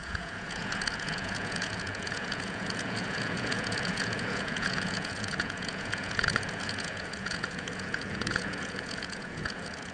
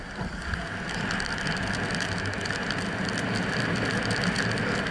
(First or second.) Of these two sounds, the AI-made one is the first